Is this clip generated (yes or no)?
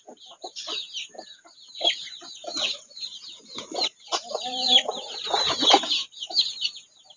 yes